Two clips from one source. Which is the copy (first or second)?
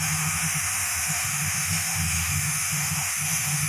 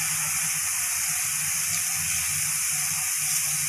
first